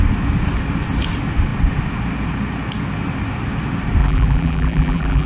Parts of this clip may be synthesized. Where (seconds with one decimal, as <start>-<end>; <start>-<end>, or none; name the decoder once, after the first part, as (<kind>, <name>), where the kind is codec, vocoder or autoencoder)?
4.0-5.3 (vocoder, BigVGAN v2)